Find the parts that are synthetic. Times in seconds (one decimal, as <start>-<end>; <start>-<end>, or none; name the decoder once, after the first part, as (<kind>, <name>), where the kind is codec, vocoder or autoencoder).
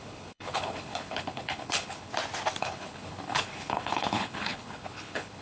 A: 0.0-2.1 (codec, HILCodec); 2.6-5.4